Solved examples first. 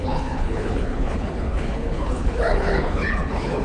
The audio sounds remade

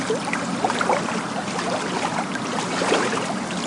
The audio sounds recorded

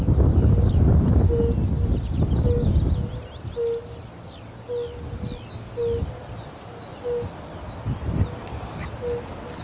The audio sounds recorded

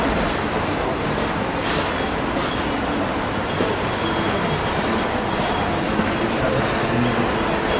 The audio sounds recorded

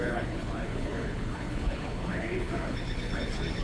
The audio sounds remade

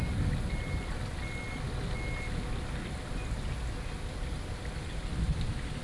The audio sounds recorded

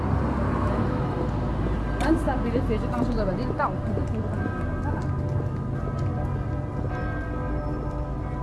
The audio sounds recorded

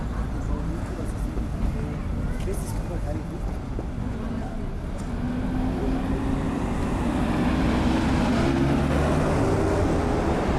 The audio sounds recorded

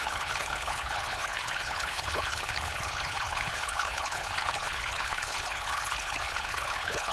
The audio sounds remade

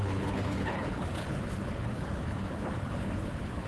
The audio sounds remade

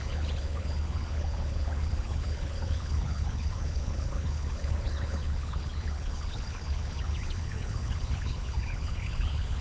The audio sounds remade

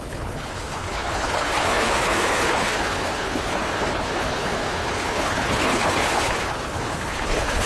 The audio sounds remade